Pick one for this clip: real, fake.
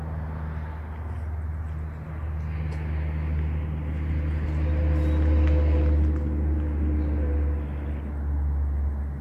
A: real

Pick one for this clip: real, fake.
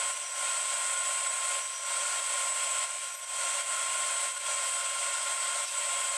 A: real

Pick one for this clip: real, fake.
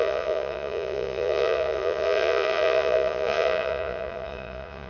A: fake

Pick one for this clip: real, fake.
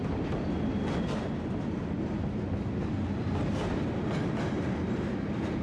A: real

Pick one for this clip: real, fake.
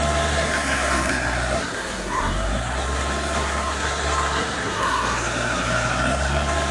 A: fake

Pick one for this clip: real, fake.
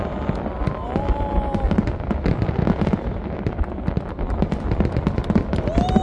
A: real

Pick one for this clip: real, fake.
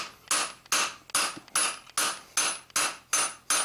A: real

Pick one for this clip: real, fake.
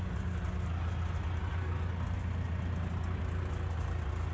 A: real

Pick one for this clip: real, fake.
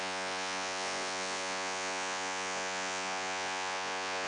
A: fake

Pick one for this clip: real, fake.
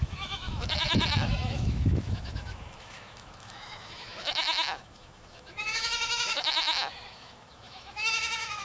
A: fake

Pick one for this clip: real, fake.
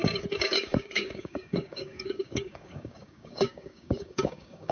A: fake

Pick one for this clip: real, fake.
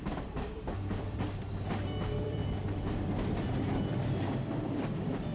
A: fake